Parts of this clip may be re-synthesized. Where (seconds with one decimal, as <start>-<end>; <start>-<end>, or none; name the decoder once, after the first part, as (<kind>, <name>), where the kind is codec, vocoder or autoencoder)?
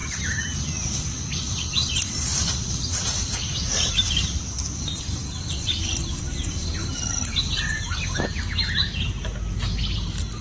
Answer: 0.0-4.4 (vocoder, BigVGAN v2)